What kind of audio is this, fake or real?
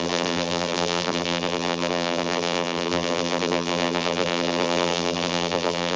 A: fake